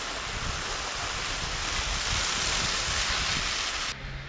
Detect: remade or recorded recorded